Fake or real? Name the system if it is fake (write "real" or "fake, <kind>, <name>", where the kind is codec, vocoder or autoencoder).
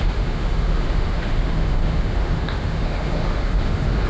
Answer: fake, autoencoder, DAC-VAE